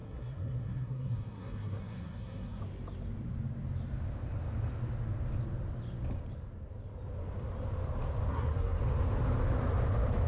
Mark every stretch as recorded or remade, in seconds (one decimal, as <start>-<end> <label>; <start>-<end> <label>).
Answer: 0.0-2.6 remade; 2.6-8.3 recorded; 8.3-8.8 remade; 8.8-10.3 recorded